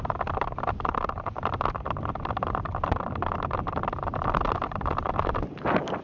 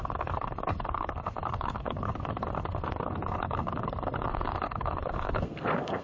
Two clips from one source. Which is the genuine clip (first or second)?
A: first